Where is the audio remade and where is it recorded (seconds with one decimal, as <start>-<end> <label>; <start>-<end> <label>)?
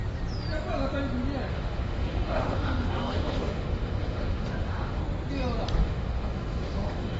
0.0-1.5 recorded; 1.5-5.0 remade; 5.0-5.8 recorded; 5.8-7.2 remade